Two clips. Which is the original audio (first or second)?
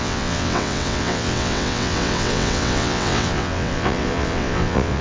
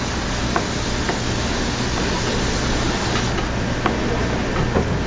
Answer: second